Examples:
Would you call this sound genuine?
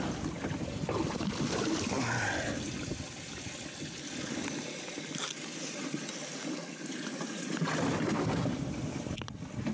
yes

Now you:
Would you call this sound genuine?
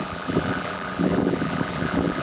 no